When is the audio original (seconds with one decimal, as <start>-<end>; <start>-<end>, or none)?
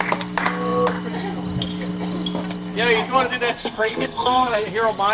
0.0-3.6; 4.6-5.1